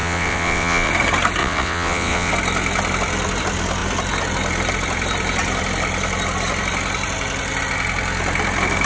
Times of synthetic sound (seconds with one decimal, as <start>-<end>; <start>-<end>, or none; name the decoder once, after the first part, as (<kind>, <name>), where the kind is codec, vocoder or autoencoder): 0.0-0.9 (vocoder, WaveNeXt); 1.4-2.3